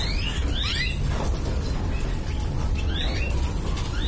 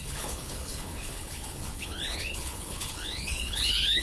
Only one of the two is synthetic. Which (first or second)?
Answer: second